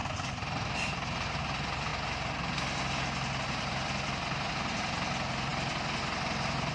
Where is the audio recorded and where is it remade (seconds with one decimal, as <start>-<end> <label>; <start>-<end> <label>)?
0.0-6.7 recorded